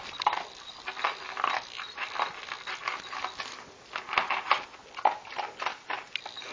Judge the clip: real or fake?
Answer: real